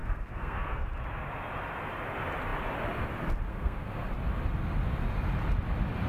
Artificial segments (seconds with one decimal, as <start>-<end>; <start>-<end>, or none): 0.0-0.9; 3.5-4.1